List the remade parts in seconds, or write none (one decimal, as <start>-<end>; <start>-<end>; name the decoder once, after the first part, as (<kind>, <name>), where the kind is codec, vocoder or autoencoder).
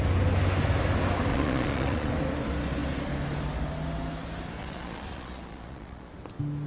1.3-2.1 (vocoder, Vocos); 4.6-6.1